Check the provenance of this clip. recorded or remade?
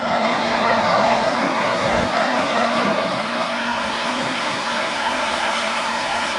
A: remade